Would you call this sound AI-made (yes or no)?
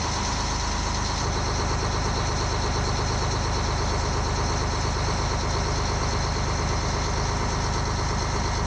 no